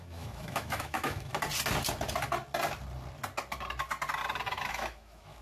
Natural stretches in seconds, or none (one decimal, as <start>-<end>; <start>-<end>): 1.3-4.5